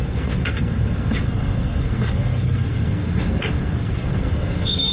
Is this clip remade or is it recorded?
remade